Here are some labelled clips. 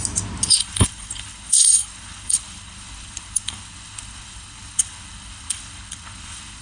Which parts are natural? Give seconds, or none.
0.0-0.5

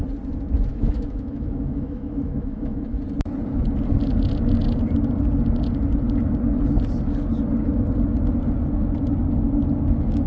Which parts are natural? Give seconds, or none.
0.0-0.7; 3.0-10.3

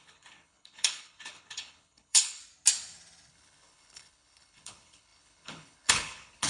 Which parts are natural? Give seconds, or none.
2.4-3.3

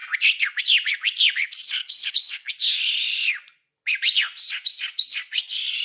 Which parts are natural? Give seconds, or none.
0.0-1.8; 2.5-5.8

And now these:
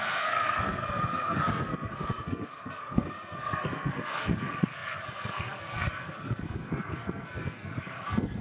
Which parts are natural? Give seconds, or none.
none